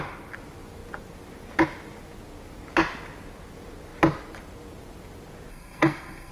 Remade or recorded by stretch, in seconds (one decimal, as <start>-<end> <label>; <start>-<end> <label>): 0.0-5.5 recorded; 5.5-6.3 remade